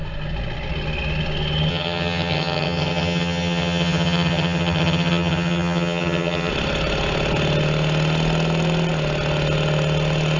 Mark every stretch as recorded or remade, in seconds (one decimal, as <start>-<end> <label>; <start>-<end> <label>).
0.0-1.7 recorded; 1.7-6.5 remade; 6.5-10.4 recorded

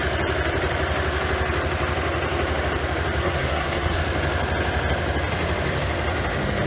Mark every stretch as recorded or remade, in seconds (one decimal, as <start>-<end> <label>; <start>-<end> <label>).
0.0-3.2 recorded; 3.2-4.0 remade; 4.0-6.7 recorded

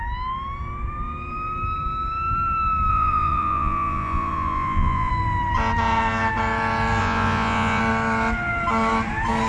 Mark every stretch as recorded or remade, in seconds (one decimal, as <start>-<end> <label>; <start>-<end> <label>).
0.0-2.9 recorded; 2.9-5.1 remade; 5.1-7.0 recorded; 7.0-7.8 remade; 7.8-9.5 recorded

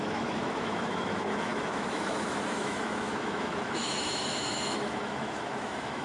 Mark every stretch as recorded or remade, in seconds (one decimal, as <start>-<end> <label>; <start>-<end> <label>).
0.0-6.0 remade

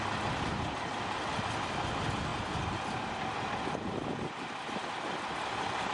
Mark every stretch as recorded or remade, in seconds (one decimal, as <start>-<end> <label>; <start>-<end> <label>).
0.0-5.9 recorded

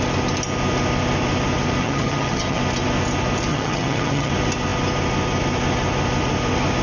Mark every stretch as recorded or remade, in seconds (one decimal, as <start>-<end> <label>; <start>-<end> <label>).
0.0-1.8 recorded; 1.8-2.6 remade; 2.6-3.5 recorded; 3.5-4.3 remade; 4.3-6.8 recorded

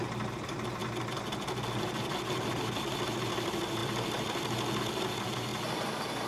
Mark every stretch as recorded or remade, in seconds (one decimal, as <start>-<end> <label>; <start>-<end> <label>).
0.0-6.3 recorded

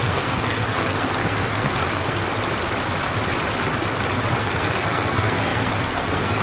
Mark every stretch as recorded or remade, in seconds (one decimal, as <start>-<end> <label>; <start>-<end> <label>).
0.0-2.2 remade; 2.2-4.4 recorded; 4.4-6.4 remade